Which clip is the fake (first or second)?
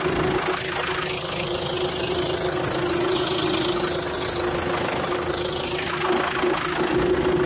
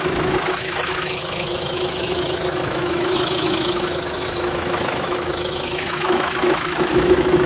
second